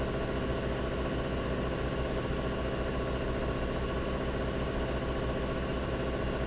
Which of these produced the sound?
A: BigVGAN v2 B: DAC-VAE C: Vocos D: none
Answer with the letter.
D